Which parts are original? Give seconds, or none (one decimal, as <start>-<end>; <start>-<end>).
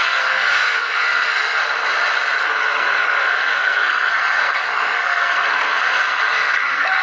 1.6-2.4